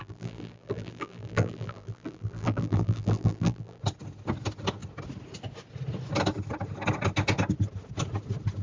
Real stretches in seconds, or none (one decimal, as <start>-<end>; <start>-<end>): 3.8-8.6